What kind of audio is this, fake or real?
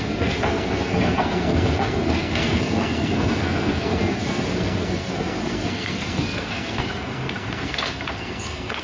fake